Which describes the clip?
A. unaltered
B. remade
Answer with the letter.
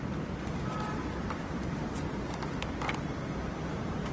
A